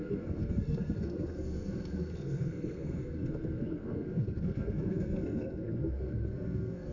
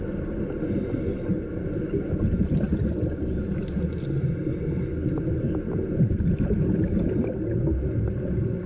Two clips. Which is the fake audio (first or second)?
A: first